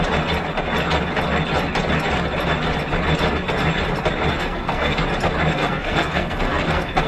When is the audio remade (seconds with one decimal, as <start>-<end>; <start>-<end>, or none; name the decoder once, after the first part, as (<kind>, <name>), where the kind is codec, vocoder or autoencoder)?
4.3-5.0 (codec, SNAC); 5.5-7.1